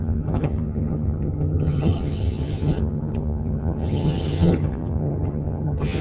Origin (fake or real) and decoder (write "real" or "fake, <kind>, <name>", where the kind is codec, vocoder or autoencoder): fake, vocoder, HiFi-GAN